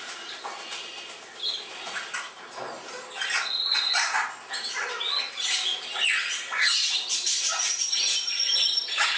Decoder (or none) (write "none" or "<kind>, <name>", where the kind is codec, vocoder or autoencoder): none